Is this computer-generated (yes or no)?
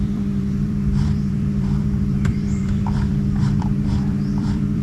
yes